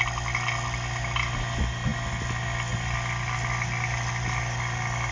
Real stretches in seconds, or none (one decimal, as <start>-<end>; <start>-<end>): 0.0-5.1